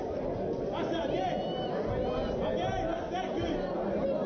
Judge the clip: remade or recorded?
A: recorded